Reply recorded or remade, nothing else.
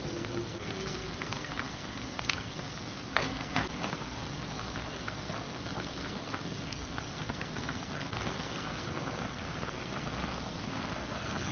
remade